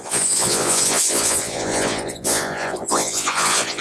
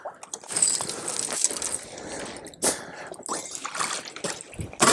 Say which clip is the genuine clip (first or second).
second